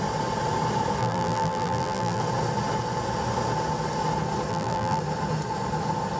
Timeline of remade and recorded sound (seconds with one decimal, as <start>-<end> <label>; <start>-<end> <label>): 0.0-1.0 recorded; 1.0-2.2 remade; 2.2-4.5 recorded; 4.5-5.0 remade; 5.0-6.2 recorded